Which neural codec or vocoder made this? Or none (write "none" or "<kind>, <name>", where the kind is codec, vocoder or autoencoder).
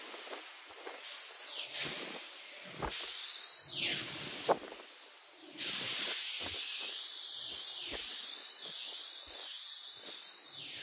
none